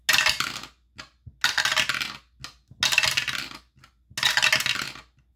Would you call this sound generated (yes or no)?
no